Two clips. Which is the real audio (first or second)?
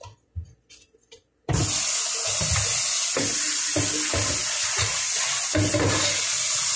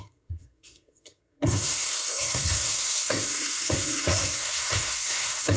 first